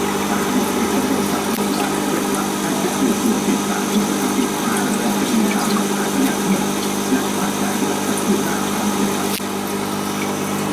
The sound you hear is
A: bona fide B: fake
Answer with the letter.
A